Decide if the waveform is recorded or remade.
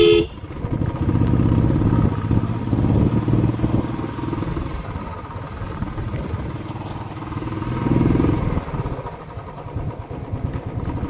recorded